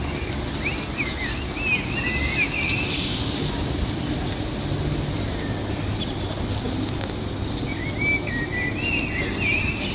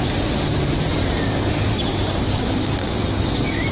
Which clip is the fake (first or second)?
second